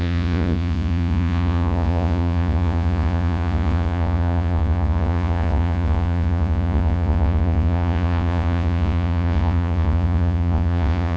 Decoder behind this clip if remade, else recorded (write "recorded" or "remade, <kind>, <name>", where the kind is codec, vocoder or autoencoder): remade, vocoder, Vocos